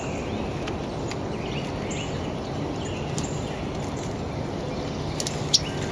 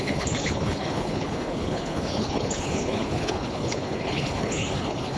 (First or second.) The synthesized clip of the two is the second